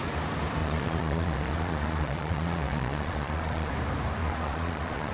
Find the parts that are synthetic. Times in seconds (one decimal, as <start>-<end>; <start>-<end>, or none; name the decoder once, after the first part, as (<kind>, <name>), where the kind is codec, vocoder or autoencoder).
0.6-3.7 (vocoder, Vocos); 4.2-5.1